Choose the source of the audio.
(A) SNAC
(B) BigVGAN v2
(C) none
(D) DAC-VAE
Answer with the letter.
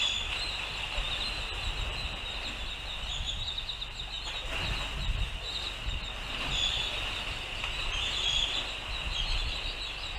C